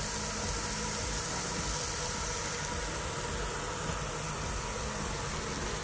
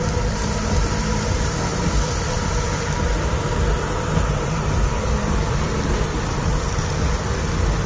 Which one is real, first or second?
first